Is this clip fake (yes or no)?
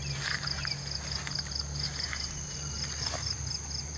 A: no